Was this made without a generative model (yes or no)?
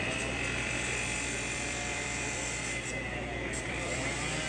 no